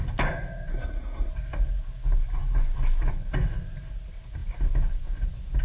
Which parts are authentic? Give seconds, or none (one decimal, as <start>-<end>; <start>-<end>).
0.0-0.7; 1.3-5.6